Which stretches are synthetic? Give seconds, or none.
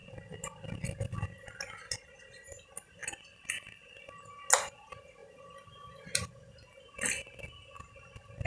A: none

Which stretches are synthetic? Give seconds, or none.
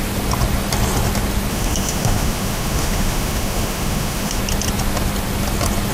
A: 1.5-4.4 (autoencoder, DAC-VAE)